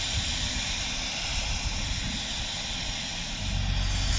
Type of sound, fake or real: real